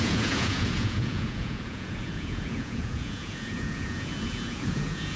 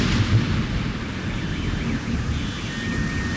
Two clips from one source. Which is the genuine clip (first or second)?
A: second